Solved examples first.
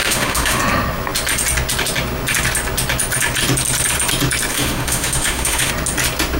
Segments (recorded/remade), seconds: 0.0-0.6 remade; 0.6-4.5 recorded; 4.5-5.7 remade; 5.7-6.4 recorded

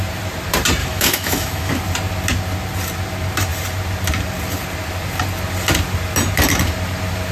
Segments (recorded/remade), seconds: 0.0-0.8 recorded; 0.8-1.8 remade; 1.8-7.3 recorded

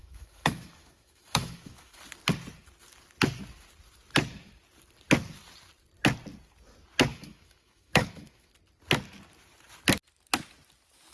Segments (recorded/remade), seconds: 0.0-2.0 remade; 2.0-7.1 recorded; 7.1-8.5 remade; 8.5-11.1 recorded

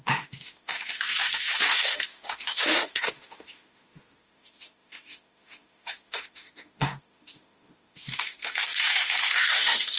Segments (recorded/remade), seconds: 0.0-10.0 remade

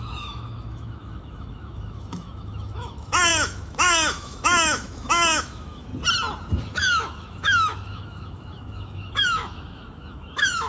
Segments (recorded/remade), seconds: 0.0-5.9 remade; 5.9-6.6 recorded; 6.6-10.7 remade

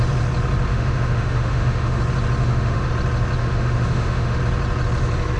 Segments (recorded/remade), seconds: 0.0-0.7 recorded; 0.7-2.0 remade; 2.0-2.4 recorded; 2.4-2.9 remade; 2.9-3.4 recorded; 3.4-4.4 remade; 4.4-5.4 recorded